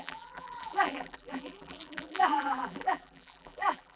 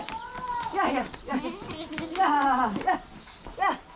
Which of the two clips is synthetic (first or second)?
first